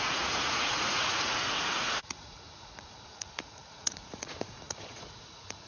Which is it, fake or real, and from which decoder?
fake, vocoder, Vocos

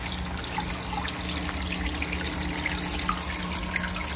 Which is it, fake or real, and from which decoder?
real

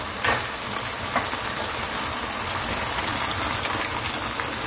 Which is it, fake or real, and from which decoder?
real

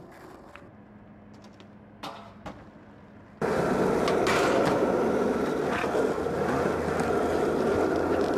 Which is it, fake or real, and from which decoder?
real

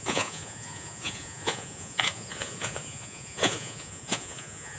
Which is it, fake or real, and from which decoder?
fake, vocoder, Vocos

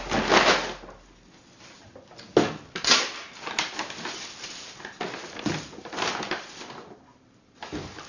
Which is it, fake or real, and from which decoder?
real